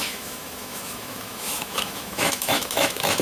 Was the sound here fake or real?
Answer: fake